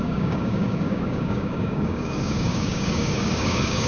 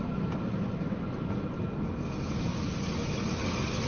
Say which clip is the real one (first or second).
second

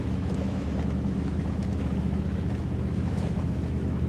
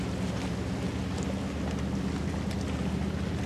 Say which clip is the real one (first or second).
second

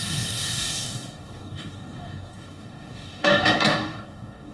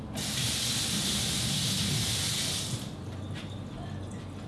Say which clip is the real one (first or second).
second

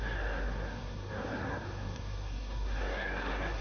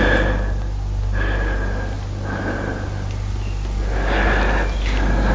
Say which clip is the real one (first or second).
second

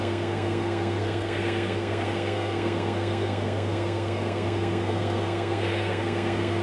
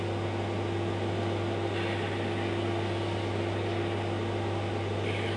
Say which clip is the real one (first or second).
second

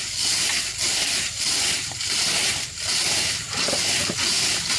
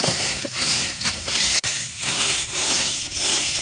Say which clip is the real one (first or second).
first